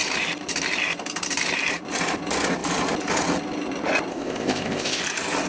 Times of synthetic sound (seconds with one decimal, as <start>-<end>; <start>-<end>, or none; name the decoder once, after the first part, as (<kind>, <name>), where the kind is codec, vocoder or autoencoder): 4.1-5.0 (codec, ZipCodec)